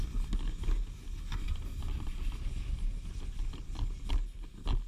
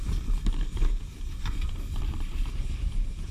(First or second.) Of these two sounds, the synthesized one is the second